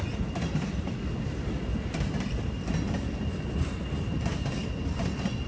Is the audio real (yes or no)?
yes